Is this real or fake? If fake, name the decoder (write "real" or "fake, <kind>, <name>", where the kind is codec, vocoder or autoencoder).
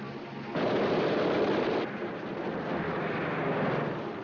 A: fake, vocoder, BigVGAN v2